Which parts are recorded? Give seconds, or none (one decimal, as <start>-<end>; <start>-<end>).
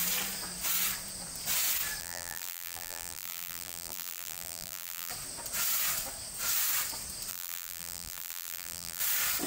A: 0.0-2.0; 5.1-7.3; 9.0-9.5